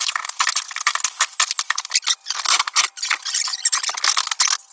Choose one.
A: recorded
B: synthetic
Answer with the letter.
A